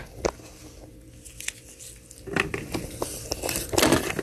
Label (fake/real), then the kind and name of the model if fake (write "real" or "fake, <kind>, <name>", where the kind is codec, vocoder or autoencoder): real